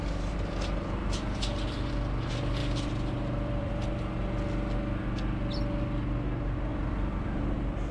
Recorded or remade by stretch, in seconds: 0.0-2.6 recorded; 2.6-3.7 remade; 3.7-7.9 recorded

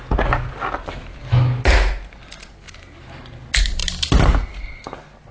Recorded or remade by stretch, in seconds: 0.0-5.3 recorded

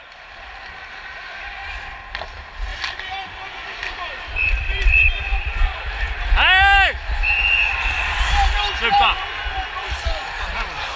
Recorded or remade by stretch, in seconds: 0.0-2.7 recorded; 2.7-5.6 remade; 5.6-7.7 recorded; 7.7-10.1 remade; 10.1-11.0 recorded

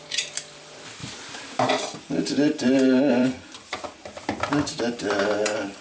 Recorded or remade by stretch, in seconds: 0.0-5.8 remade